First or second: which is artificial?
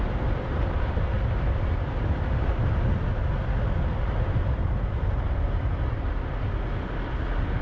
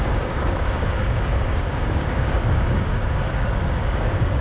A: second